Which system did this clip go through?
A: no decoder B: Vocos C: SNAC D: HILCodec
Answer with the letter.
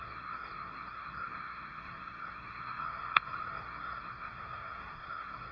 C